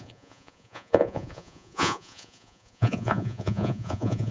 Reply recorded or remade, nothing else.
remade